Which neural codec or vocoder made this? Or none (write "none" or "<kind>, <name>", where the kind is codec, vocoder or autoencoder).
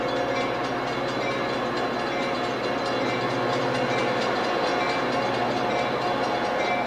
none